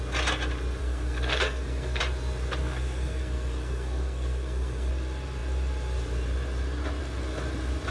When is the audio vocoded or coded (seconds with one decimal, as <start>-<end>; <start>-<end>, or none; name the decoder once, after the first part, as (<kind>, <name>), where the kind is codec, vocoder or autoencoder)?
0.8-2.0 (codec, SNAC); 2.6-4.9